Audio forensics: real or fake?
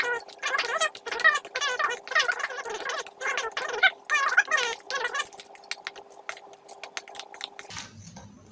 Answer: real